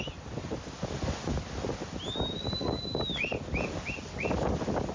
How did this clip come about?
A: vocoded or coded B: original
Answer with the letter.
B